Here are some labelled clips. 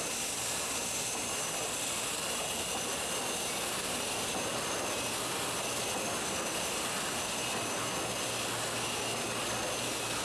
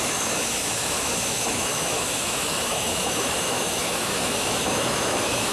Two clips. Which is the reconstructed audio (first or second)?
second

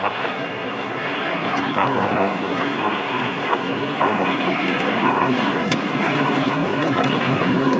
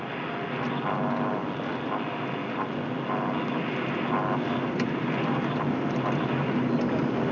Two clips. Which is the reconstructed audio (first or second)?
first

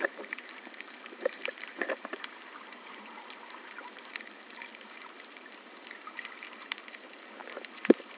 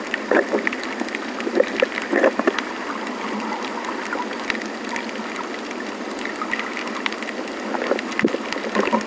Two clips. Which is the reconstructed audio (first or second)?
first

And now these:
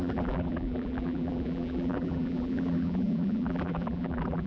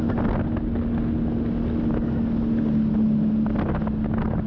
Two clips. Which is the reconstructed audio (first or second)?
first